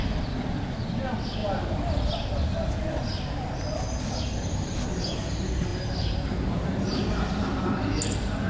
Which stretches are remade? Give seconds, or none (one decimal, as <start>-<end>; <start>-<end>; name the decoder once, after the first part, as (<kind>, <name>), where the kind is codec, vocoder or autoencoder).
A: 1.4-2.1 (vocoder, BigVGAN v2); 5.7-7.7